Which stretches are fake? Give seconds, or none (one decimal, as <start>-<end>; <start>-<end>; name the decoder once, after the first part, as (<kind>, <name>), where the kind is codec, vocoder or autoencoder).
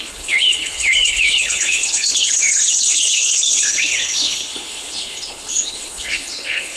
0.0-6.8 (codec, HILCodec)